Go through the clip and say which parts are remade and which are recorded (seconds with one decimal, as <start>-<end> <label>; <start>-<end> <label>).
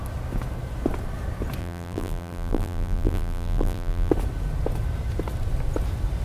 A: 0.0-1.6 recorded; 1.6-4.1 remade; 4.1-6.2 recorded